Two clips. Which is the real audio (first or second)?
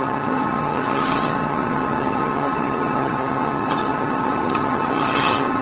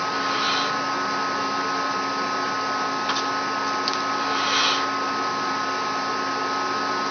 second